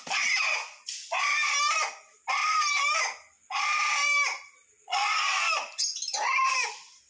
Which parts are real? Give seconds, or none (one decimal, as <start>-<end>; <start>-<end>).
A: 0.0-7.1

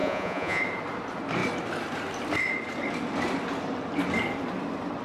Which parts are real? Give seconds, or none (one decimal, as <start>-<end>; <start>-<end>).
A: 0.6-5.0

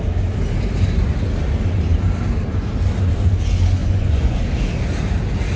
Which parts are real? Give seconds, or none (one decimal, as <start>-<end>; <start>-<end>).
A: 0.0-3.8; 4.4-5.6

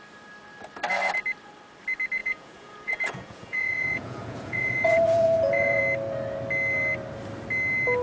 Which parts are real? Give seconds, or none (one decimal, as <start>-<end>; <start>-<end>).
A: 0.0-2.2; 5.8-8.0

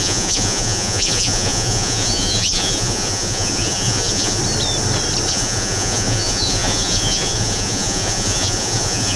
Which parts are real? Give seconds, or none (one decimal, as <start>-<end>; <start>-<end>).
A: 4.4-5.3

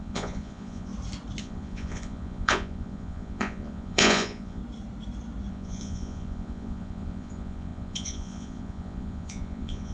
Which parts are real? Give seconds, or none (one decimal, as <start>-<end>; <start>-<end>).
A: 0.9-1.4; 4.6-5.5

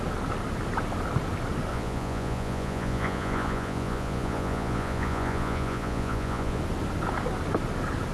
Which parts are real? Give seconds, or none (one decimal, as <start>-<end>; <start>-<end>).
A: 0.0-1.7; 6.6-8.1

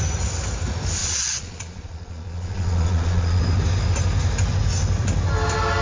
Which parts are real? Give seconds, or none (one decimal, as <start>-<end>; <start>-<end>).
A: 0.0-1.0; 3.4-5.8